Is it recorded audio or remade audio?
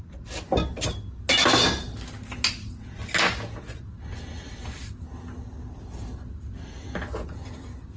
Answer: recorded